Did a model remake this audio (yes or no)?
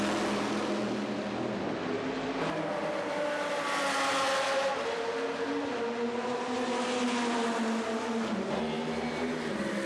no